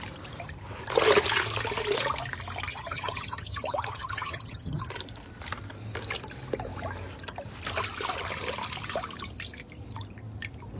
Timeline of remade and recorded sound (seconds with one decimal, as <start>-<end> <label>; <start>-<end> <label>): 0.0-2.7 recorded; 2.7-4.8 remade; 4.8-10.8 recorded